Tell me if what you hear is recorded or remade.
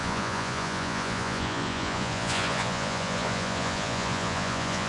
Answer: remade